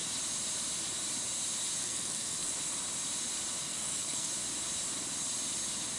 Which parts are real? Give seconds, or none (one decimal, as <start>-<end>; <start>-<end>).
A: 0.0-1.8; 2.5-3.6; 4.3-6.0